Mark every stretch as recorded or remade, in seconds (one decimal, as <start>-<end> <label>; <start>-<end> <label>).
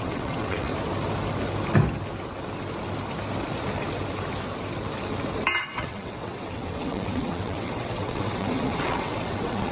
0.0-0.7 remade; 0.7-5.6 recorded; 5.6-9.7 remade